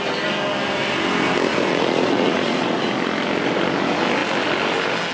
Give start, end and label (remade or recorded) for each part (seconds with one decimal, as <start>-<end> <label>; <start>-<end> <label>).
0.0-1.5 recorded; 1.5-2.9 remade; 2.9-5.1 recorded